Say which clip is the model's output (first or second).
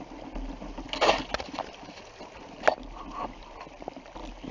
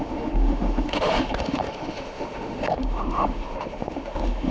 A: second